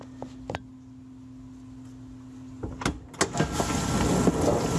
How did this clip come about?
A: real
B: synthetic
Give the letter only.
A